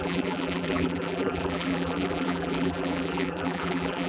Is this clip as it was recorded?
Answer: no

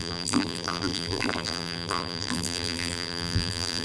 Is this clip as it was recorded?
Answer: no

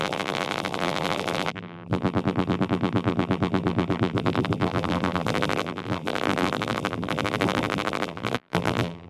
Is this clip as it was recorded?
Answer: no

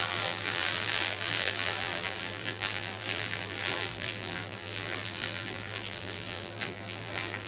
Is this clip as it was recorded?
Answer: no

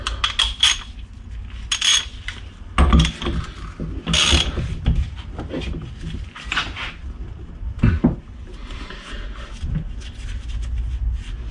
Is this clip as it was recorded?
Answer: yes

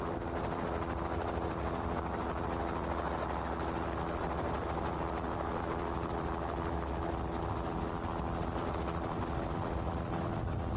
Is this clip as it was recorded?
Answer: no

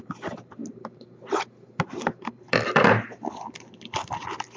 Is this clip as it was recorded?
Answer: yes